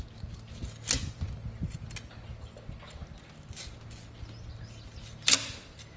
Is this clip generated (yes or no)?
no